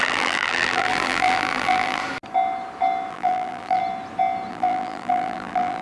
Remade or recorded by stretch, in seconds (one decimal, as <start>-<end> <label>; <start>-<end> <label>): 0.0-2.0 remade; 2.0-3.1 recorded; 3.1-3.8 remade; 3.8-4.5 recorded; 4.5-5.8 remade